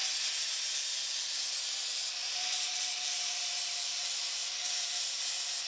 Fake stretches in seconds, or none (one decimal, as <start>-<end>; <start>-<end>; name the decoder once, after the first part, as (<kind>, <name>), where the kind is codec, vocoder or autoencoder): 2.2-5.1 (vocoder, BigVGAN v2)